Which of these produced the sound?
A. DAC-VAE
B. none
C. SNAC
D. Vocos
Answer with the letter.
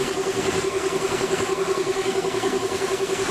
C